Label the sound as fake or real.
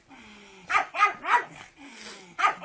real